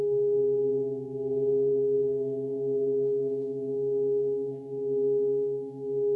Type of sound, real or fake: fake